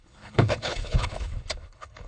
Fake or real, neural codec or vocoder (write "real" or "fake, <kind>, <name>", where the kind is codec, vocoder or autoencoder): fake, codec, HILCodec